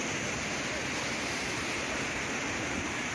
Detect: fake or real real